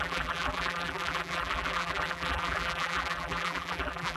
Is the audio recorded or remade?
remade